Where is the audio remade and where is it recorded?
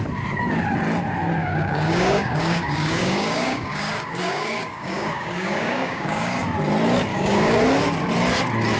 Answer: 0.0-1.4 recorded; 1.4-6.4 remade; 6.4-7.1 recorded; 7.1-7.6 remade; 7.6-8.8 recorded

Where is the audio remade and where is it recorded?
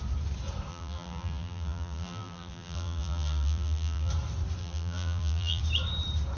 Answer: 0.0-0.7 recorded; 0.7-4.1 remade; 4.1-4.6 recorded; 4.6-5.6 remade; 5.6-6.4 recorded